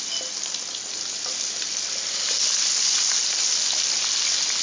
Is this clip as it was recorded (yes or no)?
yes